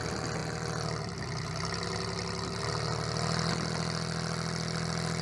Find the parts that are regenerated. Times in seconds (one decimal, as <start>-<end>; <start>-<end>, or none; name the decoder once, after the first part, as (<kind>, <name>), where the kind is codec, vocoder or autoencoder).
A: none